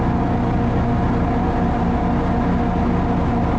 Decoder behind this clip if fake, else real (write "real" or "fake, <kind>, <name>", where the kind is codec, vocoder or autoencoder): real